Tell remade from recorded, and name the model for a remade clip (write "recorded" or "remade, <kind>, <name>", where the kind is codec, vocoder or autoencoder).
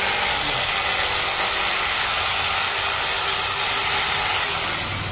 recorded